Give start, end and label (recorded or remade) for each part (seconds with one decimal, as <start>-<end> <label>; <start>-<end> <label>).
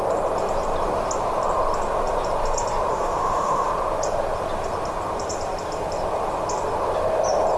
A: 0.0-2.9 recorded; 2.9-3.7 remade; 3.7-7.6 recorded